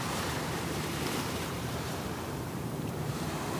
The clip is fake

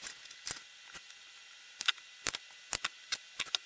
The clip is real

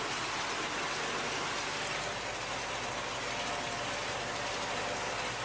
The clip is real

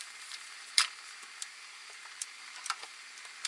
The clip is fake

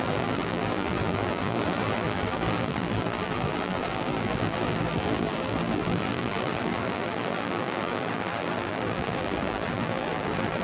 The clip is fake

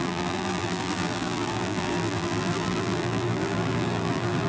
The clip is fake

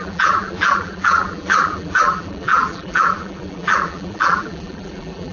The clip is fake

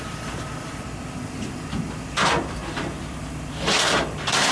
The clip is fake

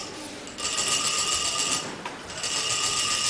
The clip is fake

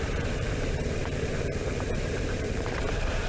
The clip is fake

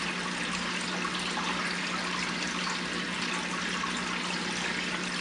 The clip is real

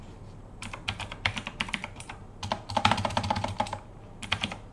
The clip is fake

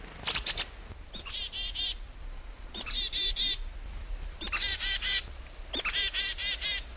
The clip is real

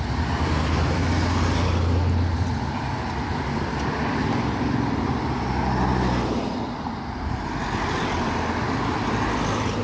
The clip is real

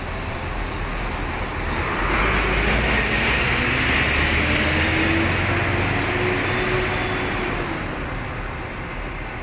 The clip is real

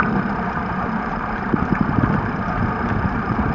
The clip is fake